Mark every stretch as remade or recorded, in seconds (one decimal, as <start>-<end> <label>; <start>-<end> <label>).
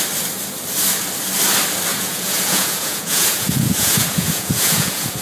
0.0-1.9 recorded; 1.9-5.2 remade